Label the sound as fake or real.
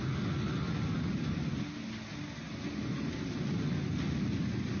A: real